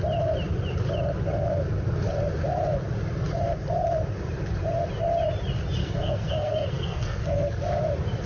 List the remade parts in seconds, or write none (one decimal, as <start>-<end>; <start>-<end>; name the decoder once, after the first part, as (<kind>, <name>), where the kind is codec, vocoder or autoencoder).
5.8-7.6 (codec, SNAC)